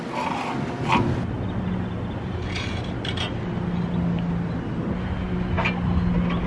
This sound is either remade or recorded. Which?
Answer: recorded